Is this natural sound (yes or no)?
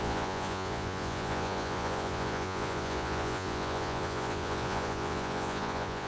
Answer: no